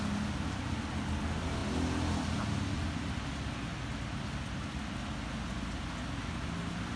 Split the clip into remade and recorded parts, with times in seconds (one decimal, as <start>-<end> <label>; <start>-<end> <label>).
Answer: 0.0-7.0 recorded